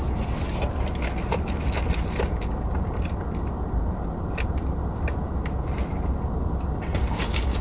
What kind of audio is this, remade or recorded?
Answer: recorded